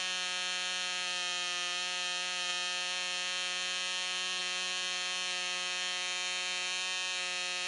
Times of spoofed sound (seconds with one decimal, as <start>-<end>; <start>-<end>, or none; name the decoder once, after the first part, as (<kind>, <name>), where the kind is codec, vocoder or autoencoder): none